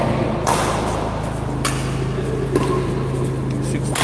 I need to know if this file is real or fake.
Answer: real